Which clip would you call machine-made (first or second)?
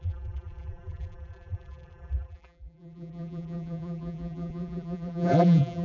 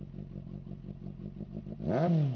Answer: first